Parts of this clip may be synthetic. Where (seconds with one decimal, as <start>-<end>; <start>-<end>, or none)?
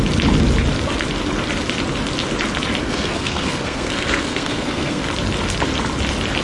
2.8-5.1